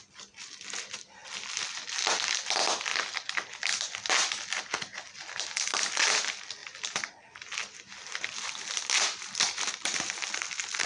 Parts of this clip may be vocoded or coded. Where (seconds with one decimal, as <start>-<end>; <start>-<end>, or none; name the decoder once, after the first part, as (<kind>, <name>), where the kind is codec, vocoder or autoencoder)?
1.2-2.0 (vocoder, BigVGAN v2)